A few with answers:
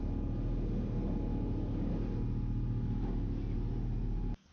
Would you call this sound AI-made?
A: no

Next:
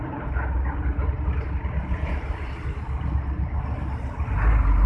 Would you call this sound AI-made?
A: no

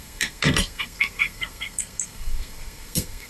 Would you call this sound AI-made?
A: yes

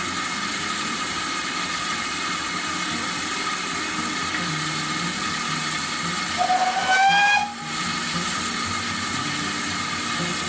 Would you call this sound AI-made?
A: no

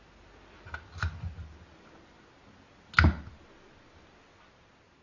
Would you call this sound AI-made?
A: no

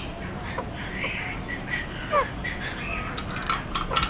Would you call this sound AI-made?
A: no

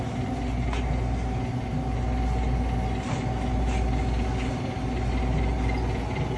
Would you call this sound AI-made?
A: no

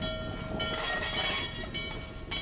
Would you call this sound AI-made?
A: no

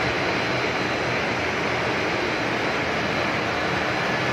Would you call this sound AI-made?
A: no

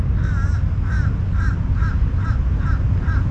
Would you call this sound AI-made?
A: no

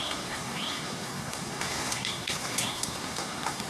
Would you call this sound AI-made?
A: yes